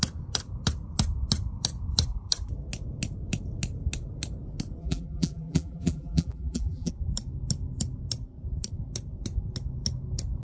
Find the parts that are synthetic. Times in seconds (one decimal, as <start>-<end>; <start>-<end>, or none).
4.8-6.9